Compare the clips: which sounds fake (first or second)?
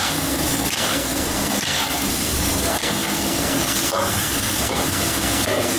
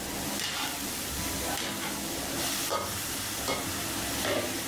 first